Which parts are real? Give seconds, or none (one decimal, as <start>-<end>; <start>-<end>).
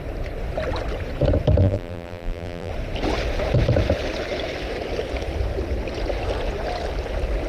0.0-1.6; 2.7-7.5